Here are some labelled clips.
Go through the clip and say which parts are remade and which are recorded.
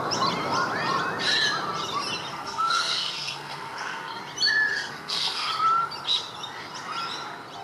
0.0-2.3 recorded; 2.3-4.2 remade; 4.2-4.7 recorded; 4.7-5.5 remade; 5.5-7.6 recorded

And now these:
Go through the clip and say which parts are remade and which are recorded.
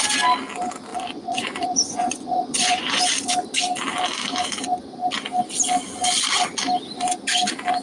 0.0-0.9 recorded; 0.9-3.0 remade; 3.0-7.8 recorded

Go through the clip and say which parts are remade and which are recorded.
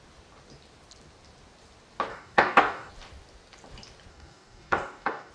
0.0-2.1 recorded; 2.1-2.9 remade; 2.9-4.1 recorded; 4.1-5.3 remade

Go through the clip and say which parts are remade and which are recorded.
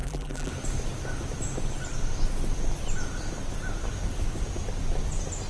0.0-0.5 remade; 0.5-5.5 recorded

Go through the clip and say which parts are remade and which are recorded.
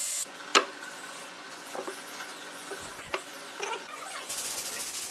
0.0-5.1 remade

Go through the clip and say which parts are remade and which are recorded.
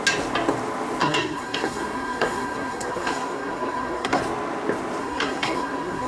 0.0-1.0 recorded; 1.0-4.2 remade; 4.2-5.0 recorded; 5.0-6.1 remade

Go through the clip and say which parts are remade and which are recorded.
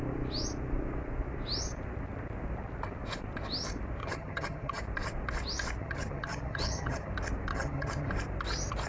0.0-4.0 recorded; 4.0-4.8 remade; 4.8-5.8 recorded; 5.8-7.1 remade; 7.1-7.5 recorded; 7.5-8.1 remade; 8.1-8.9 recorded